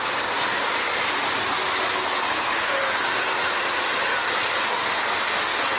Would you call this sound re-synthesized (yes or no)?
no